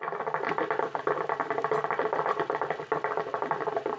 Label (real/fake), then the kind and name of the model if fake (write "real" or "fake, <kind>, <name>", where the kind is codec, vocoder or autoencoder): real